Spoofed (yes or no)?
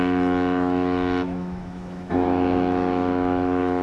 yes